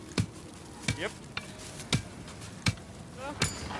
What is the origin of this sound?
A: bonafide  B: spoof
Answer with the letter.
A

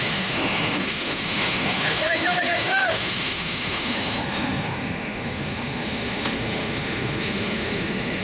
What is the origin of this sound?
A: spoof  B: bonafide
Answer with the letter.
A